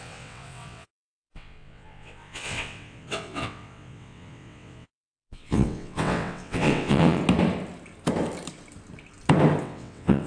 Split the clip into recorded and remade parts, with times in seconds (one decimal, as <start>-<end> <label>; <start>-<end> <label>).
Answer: 0.0-7.2 remade; 7.2-9.6 recorded; 9.6-10.3 remade